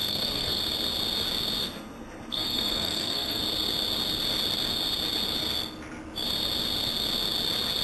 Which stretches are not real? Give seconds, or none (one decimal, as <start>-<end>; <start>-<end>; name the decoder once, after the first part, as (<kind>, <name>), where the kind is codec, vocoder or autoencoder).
0.0-0.6 (codec, SNAC); 1.6-3.4